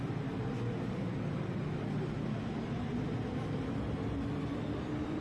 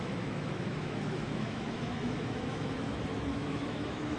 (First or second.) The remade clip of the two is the second